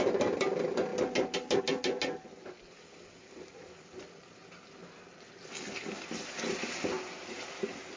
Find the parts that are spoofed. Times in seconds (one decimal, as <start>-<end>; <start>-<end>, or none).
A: none